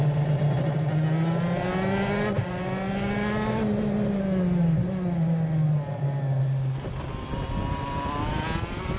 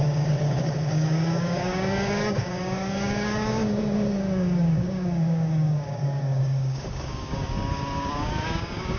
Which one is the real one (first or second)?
first